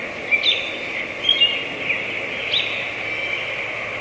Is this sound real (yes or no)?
yes